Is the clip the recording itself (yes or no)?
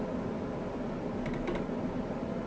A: yes